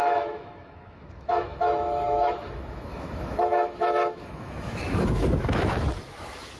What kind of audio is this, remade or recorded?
remade